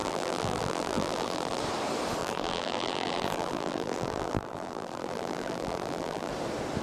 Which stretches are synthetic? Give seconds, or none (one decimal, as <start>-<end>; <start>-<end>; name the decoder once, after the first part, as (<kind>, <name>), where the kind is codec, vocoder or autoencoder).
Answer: 0.0-1.6 (vocoder, BigVGAN v2); 2.2-6.3